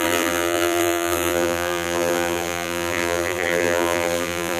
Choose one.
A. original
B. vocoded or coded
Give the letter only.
B